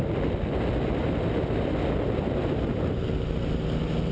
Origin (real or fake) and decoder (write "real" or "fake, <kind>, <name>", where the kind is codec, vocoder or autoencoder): real